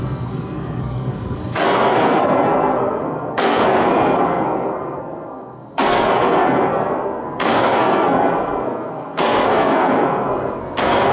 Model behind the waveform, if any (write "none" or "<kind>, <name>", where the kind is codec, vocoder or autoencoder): codec, SNAC